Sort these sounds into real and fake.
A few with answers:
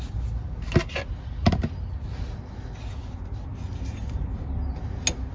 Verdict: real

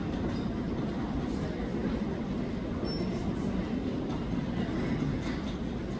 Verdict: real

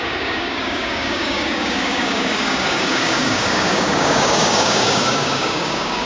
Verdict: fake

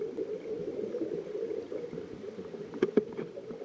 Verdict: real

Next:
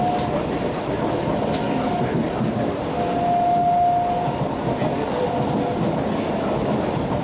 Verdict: real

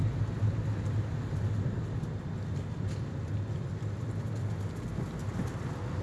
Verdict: real